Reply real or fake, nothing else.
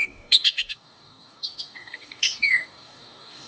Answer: fake